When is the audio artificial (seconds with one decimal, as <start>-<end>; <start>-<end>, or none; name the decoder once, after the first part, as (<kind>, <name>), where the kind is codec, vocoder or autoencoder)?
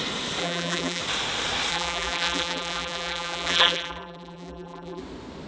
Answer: 0.4-1.0 (vocoder, BigVGAN v2); 1.7-5.0